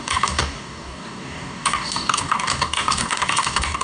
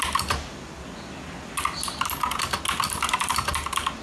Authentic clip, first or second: second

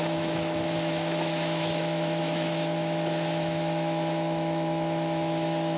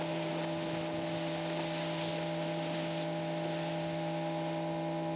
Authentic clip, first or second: second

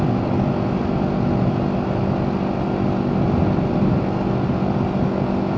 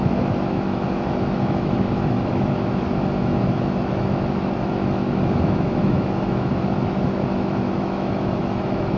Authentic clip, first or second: first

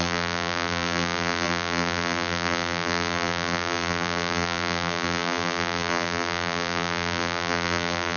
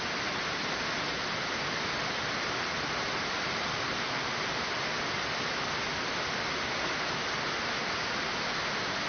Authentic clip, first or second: second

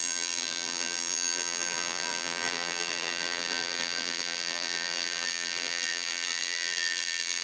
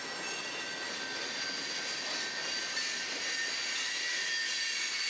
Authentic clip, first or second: second